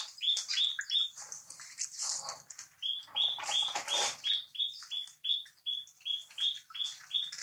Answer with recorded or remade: recorded